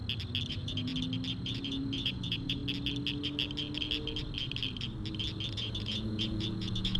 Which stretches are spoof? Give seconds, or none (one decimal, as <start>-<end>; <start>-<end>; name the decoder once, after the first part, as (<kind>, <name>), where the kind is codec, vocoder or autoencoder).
0.5-0.9 (vocoder, Vocos); 1.4-2.6; 5.5-7.0

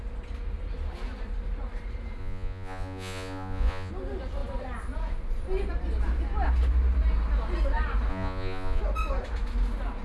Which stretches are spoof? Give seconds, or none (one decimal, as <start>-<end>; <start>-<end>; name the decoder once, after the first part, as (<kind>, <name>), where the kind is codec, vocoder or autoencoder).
2.2-3.9 (vocoder, Vocos); 8.1-8.8

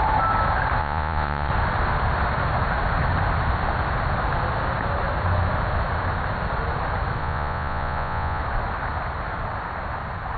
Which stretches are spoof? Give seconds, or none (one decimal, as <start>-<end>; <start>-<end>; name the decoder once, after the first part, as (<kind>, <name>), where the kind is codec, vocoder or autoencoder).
0.8-1.5 (vocoder, Vocos); 7.2-8.4